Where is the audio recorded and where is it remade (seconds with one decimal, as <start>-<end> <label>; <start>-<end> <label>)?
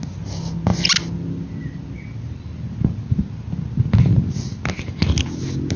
0.0-5.8 recorded